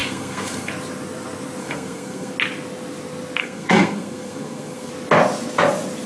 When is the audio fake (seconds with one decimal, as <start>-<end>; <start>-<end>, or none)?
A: 0.0-0.7; 1.6-2.3; 3.4-4.9